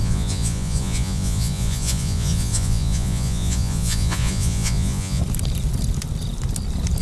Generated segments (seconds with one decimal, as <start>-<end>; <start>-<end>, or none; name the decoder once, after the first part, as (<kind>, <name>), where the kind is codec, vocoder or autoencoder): 0.0-5.2 (vocoder, Vocos)

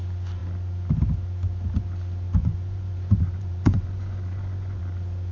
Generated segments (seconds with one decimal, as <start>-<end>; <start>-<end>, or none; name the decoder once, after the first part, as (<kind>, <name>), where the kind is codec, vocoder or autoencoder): 2.4-4.8 (vocoder, Vocos)

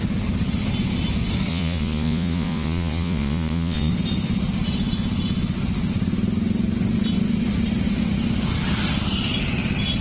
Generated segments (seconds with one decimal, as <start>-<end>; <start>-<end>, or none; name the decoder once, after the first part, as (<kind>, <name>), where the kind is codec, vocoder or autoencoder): 1.5-3.9 (vocoder, Vocos)

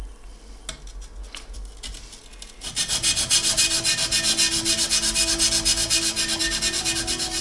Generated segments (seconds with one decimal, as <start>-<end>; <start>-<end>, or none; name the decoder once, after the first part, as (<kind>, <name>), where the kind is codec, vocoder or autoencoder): none

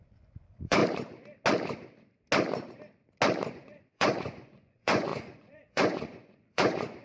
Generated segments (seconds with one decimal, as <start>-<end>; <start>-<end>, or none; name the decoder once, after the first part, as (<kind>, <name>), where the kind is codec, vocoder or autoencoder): 0.0-0.8 (vocoder, Vocos); 3.5-7.0

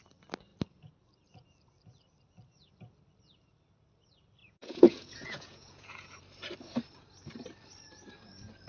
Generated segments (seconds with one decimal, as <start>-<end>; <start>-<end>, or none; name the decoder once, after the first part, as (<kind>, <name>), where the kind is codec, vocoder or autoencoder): 4.4-6.2 (vocoder, Vocos)

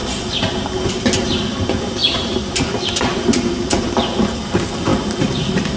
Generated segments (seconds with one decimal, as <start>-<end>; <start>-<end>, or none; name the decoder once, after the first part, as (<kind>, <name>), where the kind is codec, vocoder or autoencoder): none